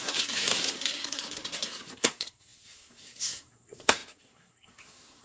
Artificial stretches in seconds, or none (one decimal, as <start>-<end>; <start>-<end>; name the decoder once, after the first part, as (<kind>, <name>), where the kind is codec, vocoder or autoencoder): 0.0-5.2 (codec, SNAC)